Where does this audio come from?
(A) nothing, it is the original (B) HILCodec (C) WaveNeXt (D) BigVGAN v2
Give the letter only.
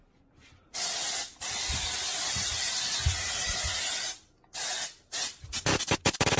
A